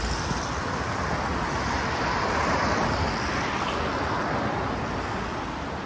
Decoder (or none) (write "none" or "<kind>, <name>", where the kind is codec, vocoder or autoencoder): none